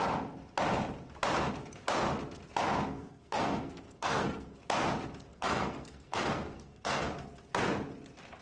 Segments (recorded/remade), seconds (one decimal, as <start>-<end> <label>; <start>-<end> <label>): 0.0-2.9 recorded; 2.9-4.6 remade; 4.6-5.3 recorded; 5.3-7.1 remade; 7.1-8.4 recorded